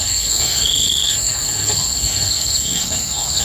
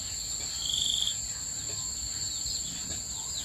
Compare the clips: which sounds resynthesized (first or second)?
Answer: first